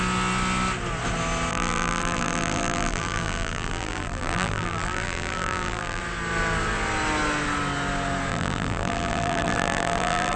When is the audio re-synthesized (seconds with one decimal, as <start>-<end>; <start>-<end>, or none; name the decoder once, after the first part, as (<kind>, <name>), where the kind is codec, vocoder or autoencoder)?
1.5-6.0 (vocoder, BigVGAN v2); 8.3-10.4